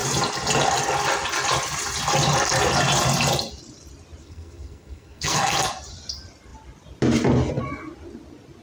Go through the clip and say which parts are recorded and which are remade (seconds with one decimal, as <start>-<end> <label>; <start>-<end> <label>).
0.0-4.2 recorded; 4.2-5.7 remade; 5.7-8.6 recorded